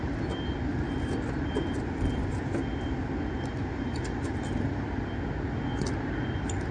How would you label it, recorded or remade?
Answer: recorded